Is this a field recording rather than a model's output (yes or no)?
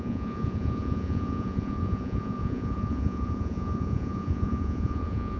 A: no